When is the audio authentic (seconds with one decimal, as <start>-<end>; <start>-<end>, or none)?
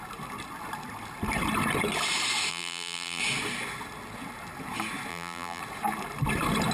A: 0.0-2.5; 3.2-5.1; 5.6-6.7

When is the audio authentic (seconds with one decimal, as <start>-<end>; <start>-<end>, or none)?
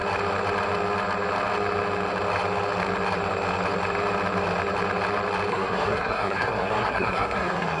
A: 0.0-5.5